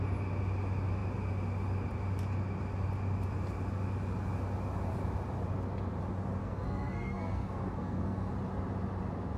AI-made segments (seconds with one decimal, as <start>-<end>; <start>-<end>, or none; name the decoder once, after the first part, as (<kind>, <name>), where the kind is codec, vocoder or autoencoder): 6.4-8.3 (codec, SNAC)

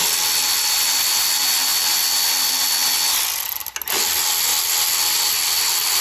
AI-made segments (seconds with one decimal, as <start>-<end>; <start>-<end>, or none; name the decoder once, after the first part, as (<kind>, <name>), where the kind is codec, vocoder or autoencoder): none

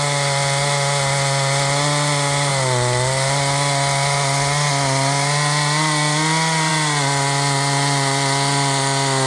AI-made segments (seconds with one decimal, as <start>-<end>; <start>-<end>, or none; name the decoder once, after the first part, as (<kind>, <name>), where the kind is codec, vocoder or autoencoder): none